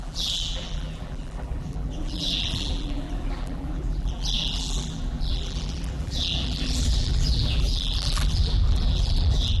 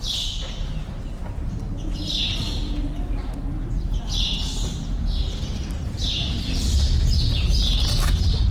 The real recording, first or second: second